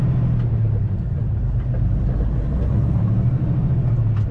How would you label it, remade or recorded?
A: recorded